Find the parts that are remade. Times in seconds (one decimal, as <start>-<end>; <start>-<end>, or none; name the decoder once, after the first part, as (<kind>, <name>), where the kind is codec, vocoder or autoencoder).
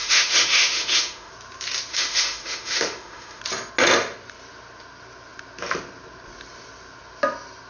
0.0-1.3 (autoencoder, DAC-VAE); 1.9-3.4